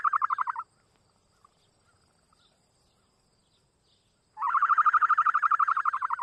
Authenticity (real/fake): real